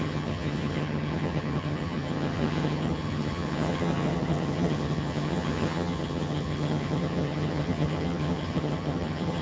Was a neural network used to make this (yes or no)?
yes